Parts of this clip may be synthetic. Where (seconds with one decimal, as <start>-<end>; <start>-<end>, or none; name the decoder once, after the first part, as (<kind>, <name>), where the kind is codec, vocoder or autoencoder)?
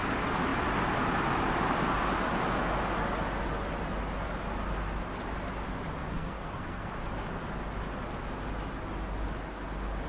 6.0-6.9 (codec, SNAC)